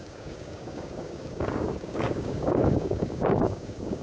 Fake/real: fake